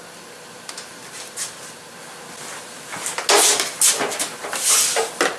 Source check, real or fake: real